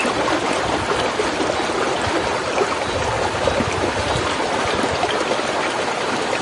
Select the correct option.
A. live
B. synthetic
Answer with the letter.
A